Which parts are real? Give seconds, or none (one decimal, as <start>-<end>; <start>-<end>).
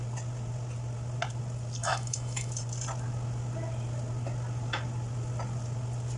0.0-1.8; 2.5-6.2